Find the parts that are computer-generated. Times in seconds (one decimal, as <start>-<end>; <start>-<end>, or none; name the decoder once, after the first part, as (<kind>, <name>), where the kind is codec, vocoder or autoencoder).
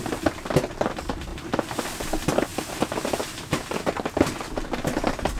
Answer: none